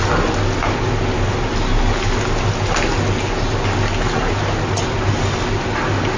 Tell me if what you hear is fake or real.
real